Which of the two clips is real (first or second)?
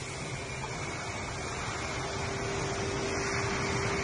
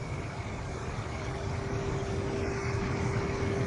first